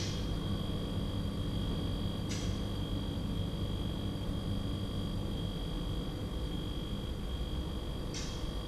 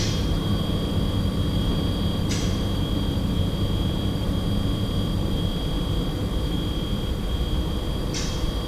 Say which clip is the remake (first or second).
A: second